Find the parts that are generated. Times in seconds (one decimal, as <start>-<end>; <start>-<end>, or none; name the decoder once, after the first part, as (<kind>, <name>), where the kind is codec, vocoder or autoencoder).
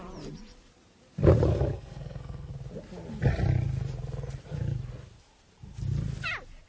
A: 1.5-2.5 (codec, SNAC)